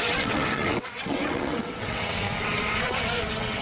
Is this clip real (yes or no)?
no